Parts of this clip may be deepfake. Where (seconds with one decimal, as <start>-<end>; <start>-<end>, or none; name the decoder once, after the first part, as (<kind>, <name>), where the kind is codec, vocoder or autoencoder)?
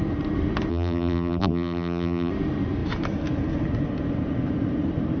0.7-2.3 (vocoder, BigVGAN v2)